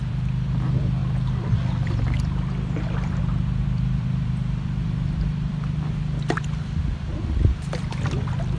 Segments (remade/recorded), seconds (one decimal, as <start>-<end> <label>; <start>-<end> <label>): 0.0-8.6 remade